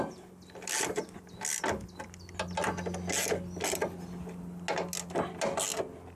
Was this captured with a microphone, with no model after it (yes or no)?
yes